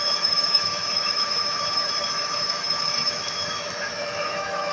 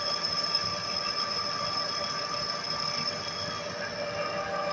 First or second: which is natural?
second